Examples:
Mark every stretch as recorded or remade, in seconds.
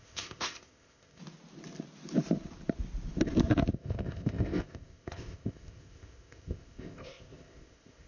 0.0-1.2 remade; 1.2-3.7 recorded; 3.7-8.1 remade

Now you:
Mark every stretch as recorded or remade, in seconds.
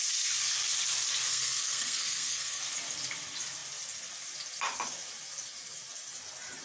0.0-1.3 recorded; 1.3-2.6 remade; 2.6-6.6 recorded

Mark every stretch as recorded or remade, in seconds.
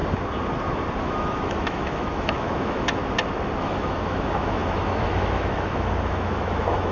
0.0-1.0 recorded; 1.0-3.0 remade; 3.0-3.6 recorded; 3.6-6.9 remade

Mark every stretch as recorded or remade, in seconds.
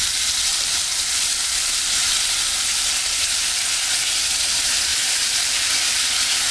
0.0-4.9 recorded; 4.9-5.7 remade; 5.7-6.5 recorded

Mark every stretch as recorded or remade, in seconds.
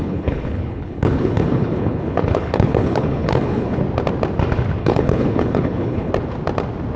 0.0-3.8 remade; 3.8-4.8 recorded; 4.8-6.1 remade; 6.1-7.0 recorded